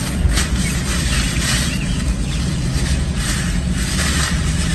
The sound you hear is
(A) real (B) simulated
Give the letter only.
A